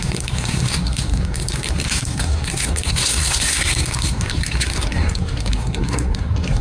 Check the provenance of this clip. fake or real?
fake